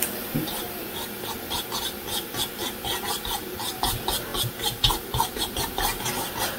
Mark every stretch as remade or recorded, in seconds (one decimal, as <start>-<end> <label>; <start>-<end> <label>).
0.0-6.6 recorded